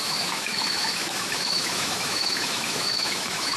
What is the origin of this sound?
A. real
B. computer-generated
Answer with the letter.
B